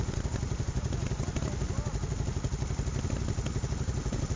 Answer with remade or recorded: recorded